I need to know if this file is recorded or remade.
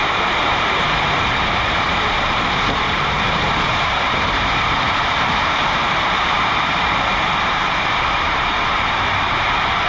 remade